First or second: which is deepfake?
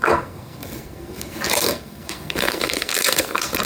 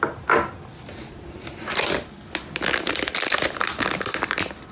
first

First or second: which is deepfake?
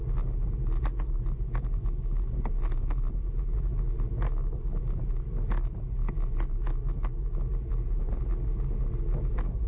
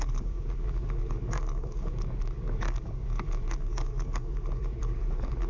second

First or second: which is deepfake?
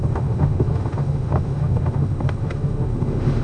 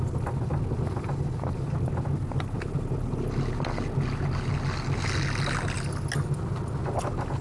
first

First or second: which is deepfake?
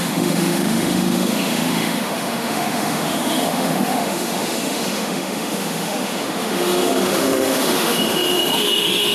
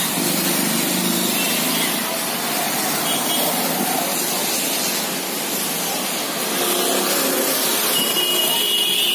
first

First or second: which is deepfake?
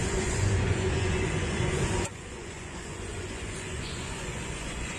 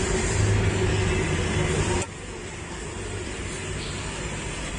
first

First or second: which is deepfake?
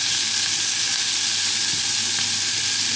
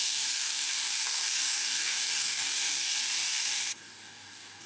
second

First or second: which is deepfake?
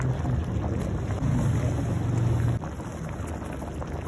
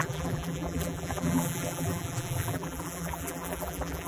second